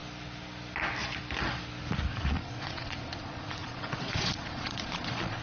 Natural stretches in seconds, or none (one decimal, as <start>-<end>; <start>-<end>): 0.0-2.1

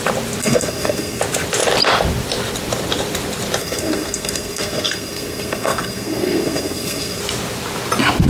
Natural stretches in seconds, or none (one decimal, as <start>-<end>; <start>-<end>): 0.0-0.4; 1.2-3.6; 7.2-8.3

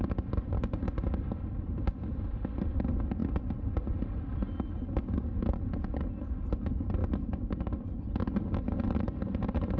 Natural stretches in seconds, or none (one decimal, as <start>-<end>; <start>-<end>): 0.0-9.8